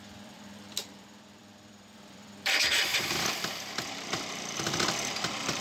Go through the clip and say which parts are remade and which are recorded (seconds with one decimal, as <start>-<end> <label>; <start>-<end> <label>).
0.0-5.6 remade

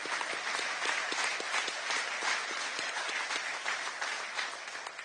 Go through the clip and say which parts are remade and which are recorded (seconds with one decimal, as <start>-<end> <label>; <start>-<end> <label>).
0.0-2.4 recorded; 2.4-3.1 remade; 3.1-5.0 recorded

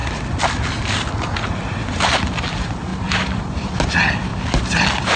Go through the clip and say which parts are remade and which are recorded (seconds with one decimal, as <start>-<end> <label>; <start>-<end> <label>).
0.0-2.9 recorded; 2.9-3.4 remade; 3.4-5.2 recorded

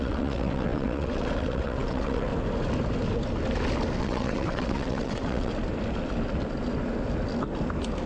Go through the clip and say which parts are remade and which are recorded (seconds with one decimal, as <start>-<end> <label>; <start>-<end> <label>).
0.0-2.3 remade; 2.3-4.0 recorded; 4.0-5.5 remade; 5.5-8.1 recorded